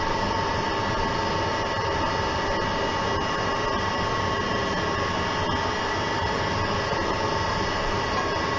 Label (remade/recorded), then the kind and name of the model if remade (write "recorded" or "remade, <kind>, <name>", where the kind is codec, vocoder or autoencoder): recorded